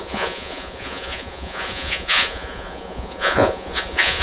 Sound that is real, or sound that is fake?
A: fake